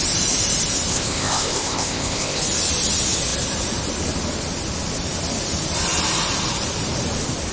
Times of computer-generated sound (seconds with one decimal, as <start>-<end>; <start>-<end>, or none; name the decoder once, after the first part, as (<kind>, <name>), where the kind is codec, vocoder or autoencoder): 0.9-2.4 (codec, ZipCodec)